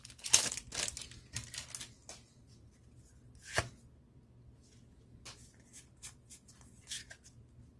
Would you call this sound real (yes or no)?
yes